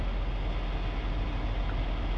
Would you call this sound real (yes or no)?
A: yes